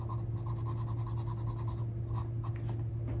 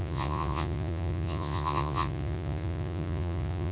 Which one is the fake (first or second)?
second